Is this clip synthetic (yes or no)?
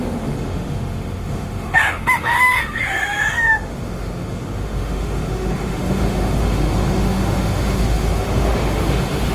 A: yes